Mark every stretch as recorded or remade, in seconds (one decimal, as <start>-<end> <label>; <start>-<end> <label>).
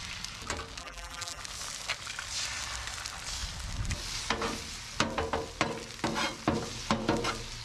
0.0-0.8 recorded; 0.8-1.4 remade; 1.4-7.6 recorded